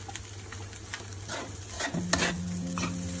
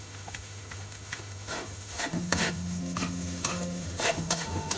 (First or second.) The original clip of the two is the first